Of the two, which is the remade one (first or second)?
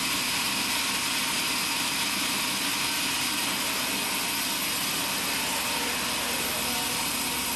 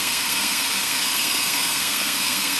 second